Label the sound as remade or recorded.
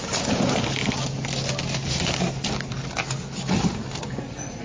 recorded